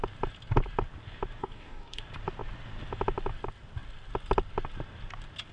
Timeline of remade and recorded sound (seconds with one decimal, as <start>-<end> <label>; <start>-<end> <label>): 0.0-1.4 recorded; 1.4-2.0 remade; 2.0-5.5 recorded